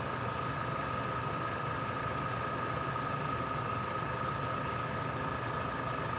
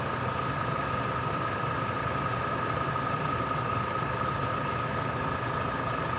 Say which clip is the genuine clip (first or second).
first